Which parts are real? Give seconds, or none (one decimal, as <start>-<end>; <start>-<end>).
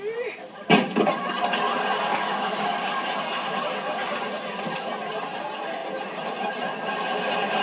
0.0-2.1; 3.1-7.6